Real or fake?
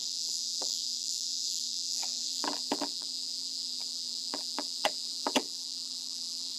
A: fake